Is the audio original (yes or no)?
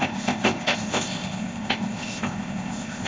no